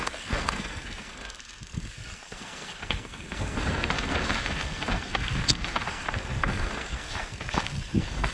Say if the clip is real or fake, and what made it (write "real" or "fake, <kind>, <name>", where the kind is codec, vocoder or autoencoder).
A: fake, codec, SNAC